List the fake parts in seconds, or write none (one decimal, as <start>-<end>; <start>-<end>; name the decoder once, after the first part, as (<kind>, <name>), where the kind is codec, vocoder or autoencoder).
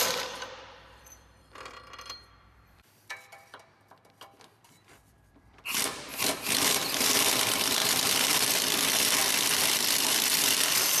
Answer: 0.0-6.1 (vocoder, BigVGAN v2); 6.9-11.0